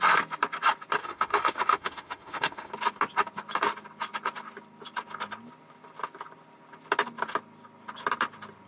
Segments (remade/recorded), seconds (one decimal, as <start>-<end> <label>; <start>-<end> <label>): 0.0-1.0 recorded; 1.0-2.7 remade; 2.7-8.7 recorded